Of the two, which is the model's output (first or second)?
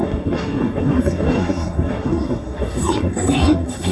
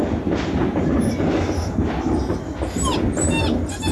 first